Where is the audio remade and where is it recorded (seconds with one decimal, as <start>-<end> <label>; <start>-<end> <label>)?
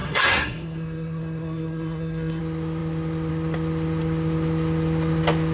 0.0-2.4 remade; 2.4-5.5 recorded